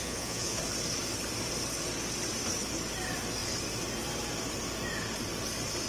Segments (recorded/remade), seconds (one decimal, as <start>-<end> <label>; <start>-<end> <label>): 0.0-0.6 remade; 0.6-5.9 recorded